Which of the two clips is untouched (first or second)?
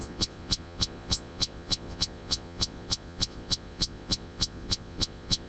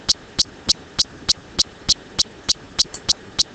second